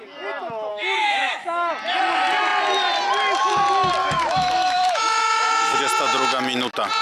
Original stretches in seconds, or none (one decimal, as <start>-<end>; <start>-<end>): 0.0-0.7; 1.7-4.0; 5.8-7.0